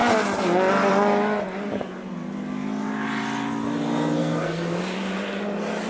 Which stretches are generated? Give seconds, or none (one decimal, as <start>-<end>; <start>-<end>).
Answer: 4.2-4.8